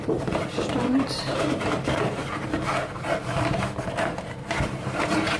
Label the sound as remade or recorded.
remade